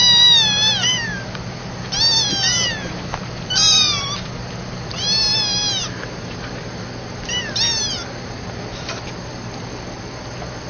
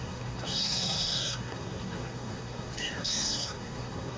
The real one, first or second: first